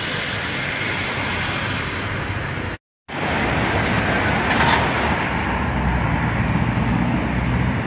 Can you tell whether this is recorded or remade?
recorded